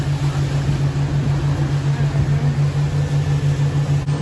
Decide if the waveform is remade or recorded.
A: recorded